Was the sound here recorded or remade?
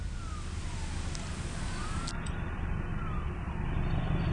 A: recorded